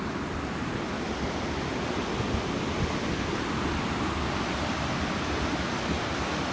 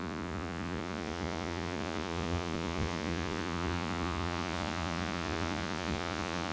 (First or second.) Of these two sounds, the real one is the first